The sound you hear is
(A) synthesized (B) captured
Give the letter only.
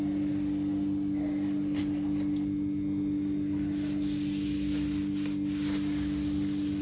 B